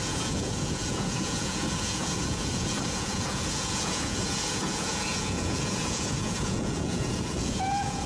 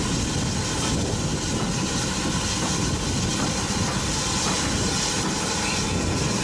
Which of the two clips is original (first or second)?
second